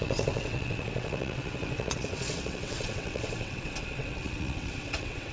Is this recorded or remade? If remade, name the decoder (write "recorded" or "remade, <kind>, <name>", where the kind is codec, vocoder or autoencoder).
remade, vocoder, WaveNeXt